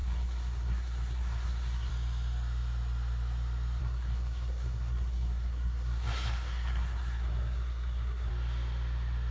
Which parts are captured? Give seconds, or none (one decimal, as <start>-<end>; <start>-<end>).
1.9-3.8; 8.3-9.3